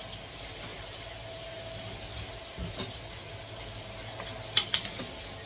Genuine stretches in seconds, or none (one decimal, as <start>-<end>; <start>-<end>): 0.0-5.5

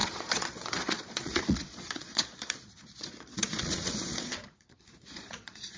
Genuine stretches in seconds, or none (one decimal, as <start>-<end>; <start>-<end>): none

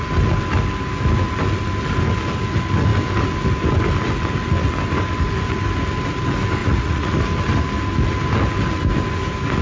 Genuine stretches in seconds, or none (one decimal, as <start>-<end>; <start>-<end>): 0.0-6.6; 7.1-9.6

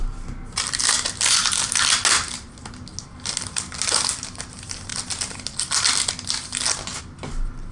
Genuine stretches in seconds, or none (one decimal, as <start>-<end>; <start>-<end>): 0.0-7.7